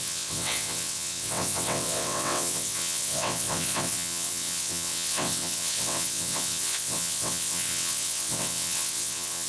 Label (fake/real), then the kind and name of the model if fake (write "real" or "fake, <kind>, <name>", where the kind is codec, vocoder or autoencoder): fake, vocoder, WaveNeXt